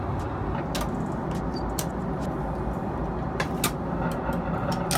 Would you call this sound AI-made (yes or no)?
no